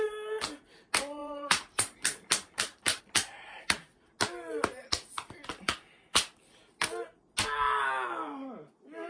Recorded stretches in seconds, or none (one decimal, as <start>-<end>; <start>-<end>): 0.0-1.2; 3.0-9.1